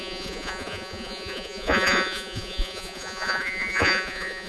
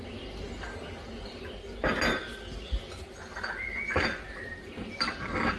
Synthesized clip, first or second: first